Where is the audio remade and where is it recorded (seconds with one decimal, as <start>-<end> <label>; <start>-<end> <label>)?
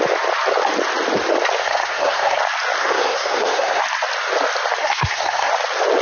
0.0-1.6 recorded; 1.6-2.4 remade; 2.4-2.8 recorded; 2.8-3.8 remade; 3.8-4.8 recorded; 4.8-5.5 remade; 5.5-6.0 recorded